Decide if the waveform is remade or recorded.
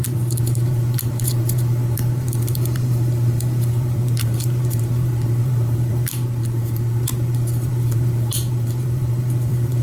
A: remade